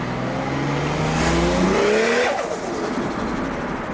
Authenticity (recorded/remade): recorded